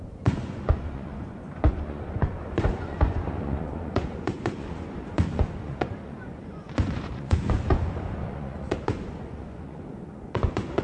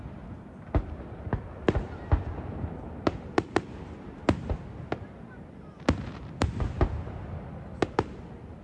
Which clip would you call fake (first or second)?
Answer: first